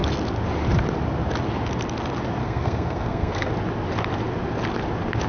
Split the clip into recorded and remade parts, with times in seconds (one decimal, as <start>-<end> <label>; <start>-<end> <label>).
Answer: 0.0-2.4 recorded; 2.4-3.5 remade; 3.5-5.3 recorded